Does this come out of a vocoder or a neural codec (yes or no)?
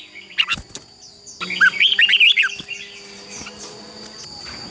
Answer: no